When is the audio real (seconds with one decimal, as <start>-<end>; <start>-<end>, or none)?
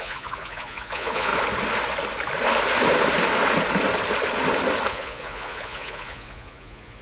1.3-4.9